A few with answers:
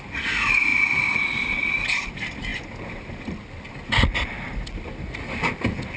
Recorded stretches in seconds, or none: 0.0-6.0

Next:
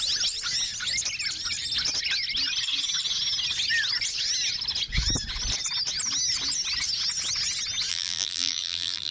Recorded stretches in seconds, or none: 0.0-7.9